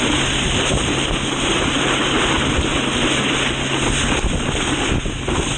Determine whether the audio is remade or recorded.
recorded